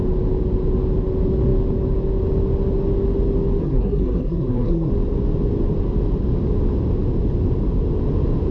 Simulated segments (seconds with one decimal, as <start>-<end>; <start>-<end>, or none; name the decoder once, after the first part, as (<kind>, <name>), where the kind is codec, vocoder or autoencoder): 3.6-4.9 (codec, SNAC)

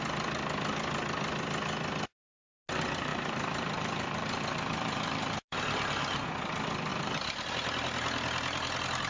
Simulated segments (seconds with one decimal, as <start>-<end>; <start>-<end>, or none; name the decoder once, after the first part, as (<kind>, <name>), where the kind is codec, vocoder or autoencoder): 3.1-5.6 (vocoder, BigVGAN v2); 6.9-7.5

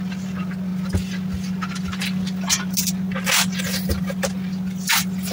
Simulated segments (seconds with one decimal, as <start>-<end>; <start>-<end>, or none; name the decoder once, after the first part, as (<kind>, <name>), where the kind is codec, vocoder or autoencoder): none

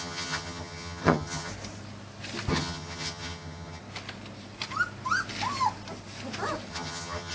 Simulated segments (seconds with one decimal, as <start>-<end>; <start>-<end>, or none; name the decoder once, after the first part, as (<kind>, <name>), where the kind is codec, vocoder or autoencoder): 0.0-1.5 (vocoder, HiFi-GAN); 2.5-3.8; 6.7-7.3

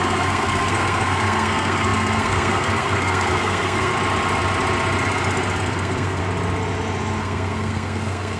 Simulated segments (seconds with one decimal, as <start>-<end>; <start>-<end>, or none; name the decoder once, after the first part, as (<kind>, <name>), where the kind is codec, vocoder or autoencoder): 0.0-3.9 (codec, SNAC); 5.6-6.2; 7.2-8.4

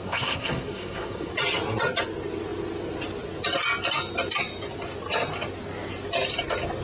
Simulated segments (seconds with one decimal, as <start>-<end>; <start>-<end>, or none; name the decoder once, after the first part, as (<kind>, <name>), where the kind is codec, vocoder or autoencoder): 0.0-1.3 (codec, SNAC)

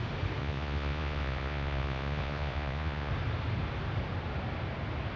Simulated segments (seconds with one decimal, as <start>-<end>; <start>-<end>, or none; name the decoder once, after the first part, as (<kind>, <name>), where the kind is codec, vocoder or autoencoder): 0.4-3.1 (vocoder, Vocos)

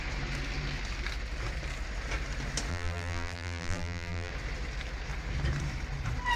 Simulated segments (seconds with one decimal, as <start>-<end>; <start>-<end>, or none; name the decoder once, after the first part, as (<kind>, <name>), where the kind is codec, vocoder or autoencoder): 2.7-4.3 (vocoder, BigVGAN v2)